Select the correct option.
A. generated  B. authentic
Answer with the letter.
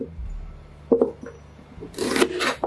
B